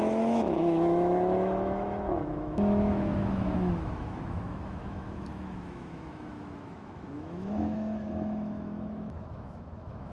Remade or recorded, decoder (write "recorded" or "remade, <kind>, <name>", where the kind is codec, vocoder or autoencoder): remade, autoencoder, DAC-VAE